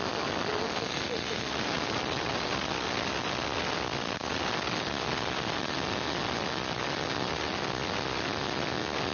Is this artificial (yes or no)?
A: no